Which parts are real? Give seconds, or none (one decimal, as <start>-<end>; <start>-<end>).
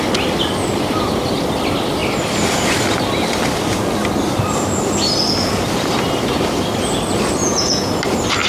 0.0-7.4; 8.0-8.5